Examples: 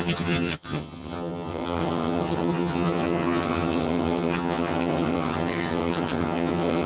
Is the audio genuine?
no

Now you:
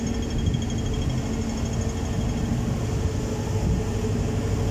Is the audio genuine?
yes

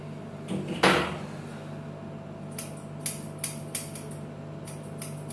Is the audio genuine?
yes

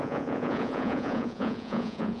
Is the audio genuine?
no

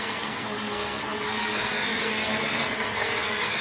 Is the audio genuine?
no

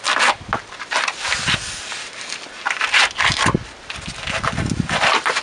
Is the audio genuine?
yes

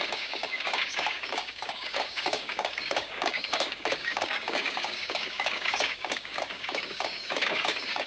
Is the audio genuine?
no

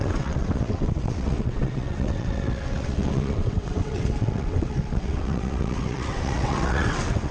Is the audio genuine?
no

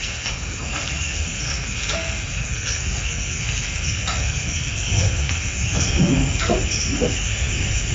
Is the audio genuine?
no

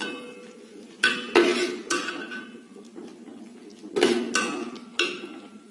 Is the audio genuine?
yes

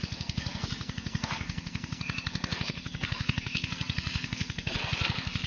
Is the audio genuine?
no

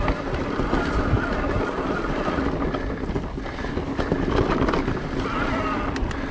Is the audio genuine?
yes